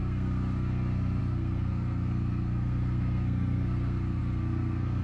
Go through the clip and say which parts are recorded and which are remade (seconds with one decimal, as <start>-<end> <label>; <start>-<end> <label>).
0.0-5.0 remade